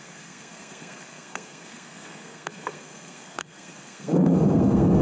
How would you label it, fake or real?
fake